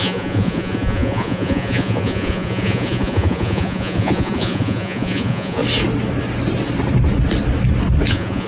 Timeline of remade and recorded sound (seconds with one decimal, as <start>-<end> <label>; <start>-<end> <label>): 0.0-5.6 remade; 5.6-8.1 recorded; 8.1-8.5 remade